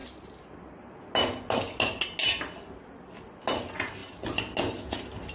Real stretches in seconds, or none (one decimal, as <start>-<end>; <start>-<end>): 0.0-5.3